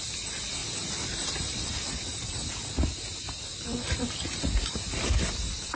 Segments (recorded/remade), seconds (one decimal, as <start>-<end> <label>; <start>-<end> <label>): 0.0-5.8 recorded